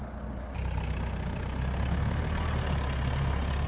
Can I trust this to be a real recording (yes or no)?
yes